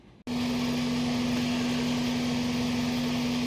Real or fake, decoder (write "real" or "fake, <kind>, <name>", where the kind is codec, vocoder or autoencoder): real